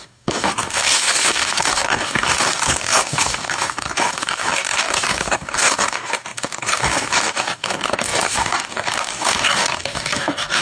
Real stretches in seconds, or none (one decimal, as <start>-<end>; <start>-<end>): none

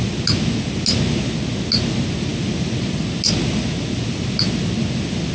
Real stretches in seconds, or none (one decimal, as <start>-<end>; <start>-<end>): 0.0-5.3

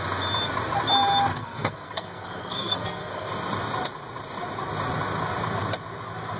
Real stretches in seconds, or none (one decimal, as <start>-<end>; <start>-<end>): 0.0-1.3; 3.3-6.4

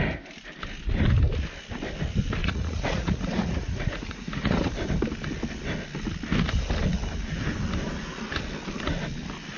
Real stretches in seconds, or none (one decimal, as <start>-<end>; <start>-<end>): 0.0-2.4; 4.7-9.6

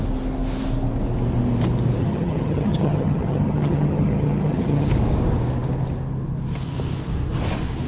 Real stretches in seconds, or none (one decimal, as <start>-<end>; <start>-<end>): 0.0-2.0; 4.9-7.9

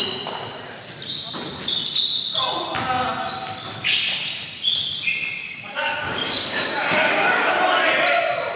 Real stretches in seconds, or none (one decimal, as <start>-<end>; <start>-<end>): 0.0-5.4; 7.5-8.6

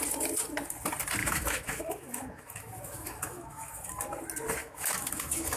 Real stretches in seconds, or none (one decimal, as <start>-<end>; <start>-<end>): 0.0-1.2; 4.0-4.6